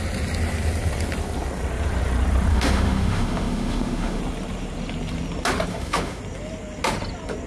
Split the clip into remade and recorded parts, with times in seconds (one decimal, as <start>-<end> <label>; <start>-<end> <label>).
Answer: 0.0-2.5 recorded; 2.5-4.2 remade; 4.2-5.7 recorded; 5.7-6.2 remade; 6.2-7.5 recorded